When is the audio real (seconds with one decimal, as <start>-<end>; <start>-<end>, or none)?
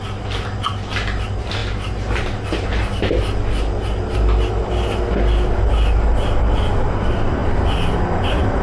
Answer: 0.0-8.6